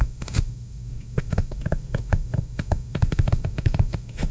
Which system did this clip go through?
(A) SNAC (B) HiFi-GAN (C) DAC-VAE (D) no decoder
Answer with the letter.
C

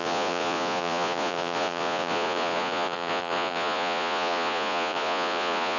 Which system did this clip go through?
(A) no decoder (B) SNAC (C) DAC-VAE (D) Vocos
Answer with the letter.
D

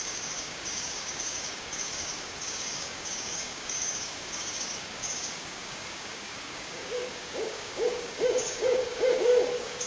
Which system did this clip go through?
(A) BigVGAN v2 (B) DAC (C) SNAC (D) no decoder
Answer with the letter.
B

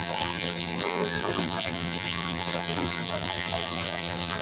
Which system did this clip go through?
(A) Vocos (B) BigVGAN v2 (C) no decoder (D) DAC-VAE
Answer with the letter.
B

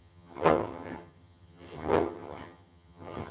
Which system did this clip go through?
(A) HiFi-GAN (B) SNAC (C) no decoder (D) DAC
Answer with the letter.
A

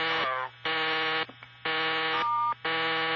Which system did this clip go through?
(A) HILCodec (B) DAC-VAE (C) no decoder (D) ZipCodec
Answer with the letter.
C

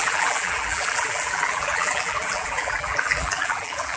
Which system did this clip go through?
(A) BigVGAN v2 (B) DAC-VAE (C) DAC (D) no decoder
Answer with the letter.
A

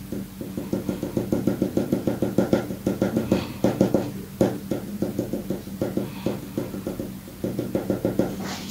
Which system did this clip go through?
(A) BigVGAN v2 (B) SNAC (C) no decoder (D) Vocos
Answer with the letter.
C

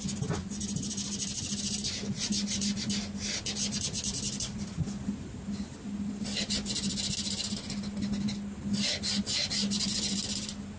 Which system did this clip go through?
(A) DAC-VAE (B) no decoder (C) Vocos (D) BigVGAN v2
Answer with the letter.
B